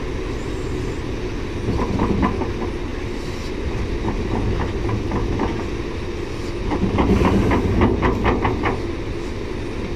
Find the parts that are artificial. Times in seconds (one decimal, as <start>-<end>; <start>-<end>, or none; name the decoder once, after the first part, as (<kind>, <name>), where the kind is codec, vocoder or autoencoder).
none